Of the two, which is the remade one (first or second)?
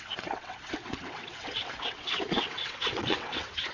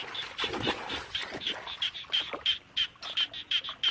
first